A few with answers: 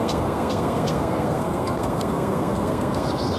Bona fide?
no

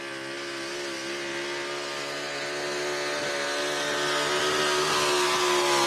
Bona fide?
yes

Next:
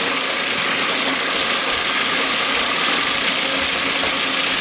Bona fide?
yes